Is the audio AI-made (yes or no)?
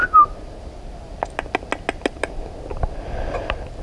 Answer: no